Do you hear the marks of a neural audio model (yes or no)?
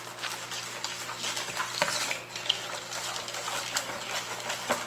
no